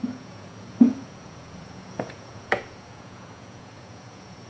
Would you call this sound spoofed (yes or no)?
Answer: yes